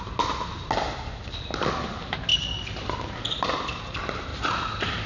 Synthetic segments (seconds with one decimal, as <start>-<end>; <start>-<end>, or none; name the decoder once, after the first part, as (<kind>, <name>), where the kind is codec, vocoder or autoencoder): none